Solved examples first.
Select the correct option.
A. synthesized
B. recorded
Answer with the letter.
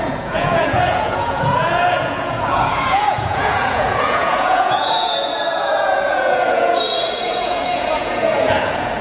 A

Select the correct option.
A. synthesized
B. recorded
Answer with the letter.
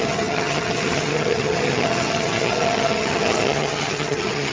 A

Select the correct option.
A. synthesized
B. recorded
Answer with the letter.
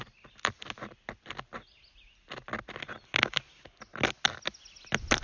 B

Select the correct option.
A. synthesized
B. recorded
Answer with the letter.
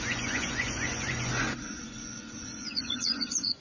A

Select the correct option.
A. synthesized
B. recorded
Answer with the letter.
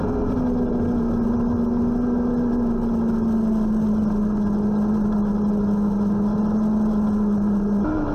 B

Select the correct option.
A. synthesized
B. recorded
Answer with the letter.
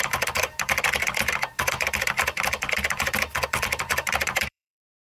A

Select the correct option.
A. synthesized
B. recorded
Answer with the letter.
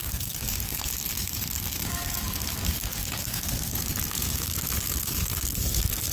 A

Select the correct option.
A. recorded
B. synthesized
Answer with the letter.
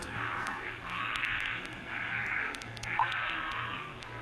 B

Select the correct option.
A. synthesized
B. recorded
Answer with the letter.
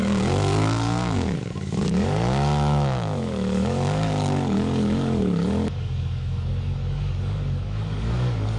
A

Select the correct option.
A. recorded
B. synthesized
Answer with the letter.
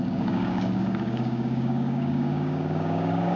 B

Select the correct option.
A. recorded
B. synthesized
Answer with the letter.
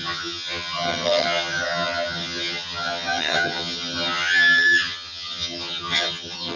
B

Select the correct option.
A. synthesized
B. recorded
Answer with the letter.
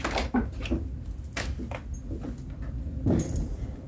B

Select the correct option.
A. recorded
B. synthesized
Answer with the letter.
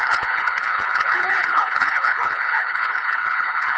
B